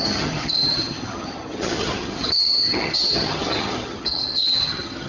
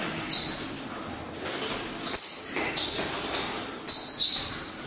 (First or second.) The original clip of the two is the second